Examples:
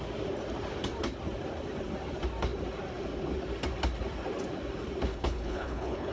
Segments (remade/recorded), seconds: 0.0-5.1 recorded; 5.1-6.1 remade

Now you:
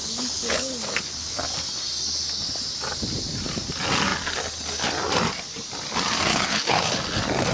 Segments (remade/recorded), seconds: 0.0-1.4 remade; 1.4-6.3 recorded; 6.3-7.0 remade; 7.0-7.5 recorded

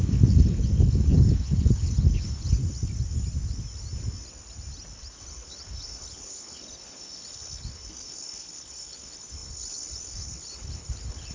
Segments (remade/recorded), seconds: 0.0-2.6 remade; 2.6-5.2 recorded; 5.2-11.3 remade

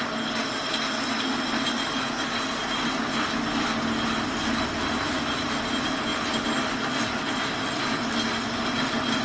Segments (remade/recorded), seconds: 0.0-9.2 recorded

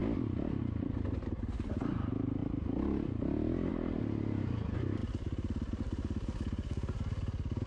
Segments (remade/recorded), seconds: 0.0-7.7 recorded

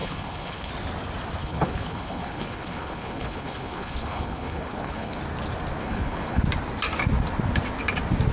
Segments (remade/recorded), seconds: 0.0-0.7 remade; 0.7-1.4 recorded; 1.4-5.2 remade; 5.2-5.8 recorded; 5.8-6.4 remade; 6.4-8.3 recorded